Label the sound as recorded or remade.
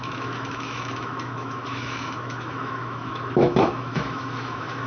remade